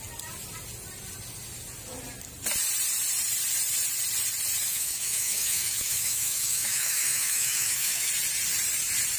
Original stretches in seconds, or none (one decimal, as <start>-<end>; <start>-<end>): 0.0-4.7; 8.1-9.2